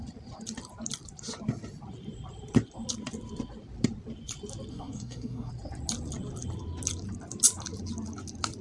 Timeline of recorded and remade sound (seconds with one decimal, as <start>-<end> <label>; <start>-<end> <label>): 0.0-4.7 recorded; 4.7-5.5 remade; 5.5-8.6 recorded